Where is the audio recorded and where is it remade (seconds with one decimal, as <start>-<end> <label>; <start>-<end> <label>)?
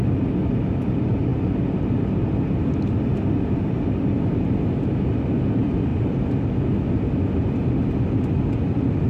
0.0-9.1 recorded